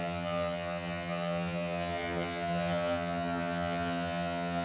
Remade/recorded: remade